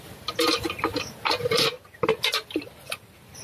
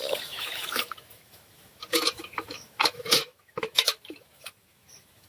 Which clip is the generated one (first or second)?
second